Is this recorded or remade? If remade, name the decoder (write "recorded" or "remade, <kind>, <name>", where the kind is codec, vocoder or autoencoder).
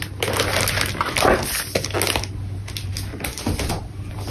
recorded